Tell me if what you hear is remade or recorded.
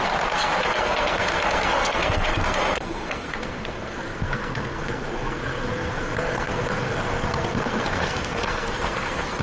remade